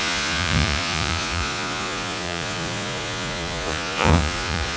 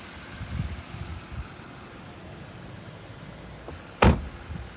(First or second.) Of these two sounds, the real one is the second